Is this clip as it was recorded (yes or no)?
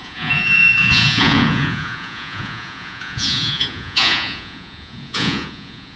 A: no